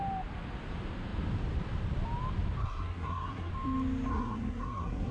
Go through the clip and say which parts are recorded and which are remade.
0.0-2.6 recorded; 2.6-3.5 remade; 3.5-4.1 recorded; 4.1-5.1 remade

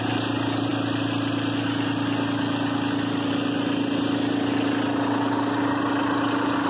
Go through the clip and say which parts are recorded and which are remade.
0.0-6.7 recorded

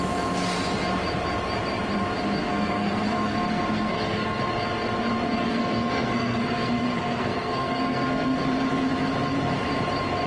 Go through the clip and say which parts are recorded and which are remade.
0.0-2.4 recorded; 2.4-4.4 remade; 4.4-5.4 recorded; 5.4-8.4 remade; 8.4-10.3 recorded

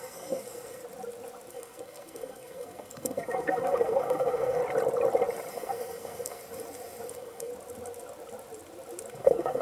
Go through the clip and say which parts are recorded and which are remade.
0.0-0.8 remade; 0.8-1.5 recorded; 1.5-4.6 remade; 4.6-5.5 recorded; 5.5-6.4 remade; 6.4-7.1 recorded; 7.1-7.5 remade; 7.5-9.1 recorded; 9.1-9.6 remade

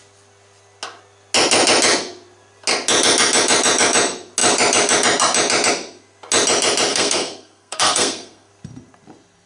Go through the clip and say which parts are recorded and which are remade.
0.0-6.9 recorded; 6.9-8.5 remade; 8.5-9.5 recorded